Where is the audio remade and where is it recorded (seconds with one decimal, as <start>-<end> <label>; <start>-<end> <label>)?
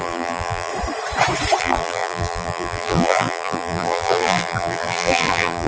0.0-0.7 remade; 0.7-1.6 recorded; 1.6-5.7 remade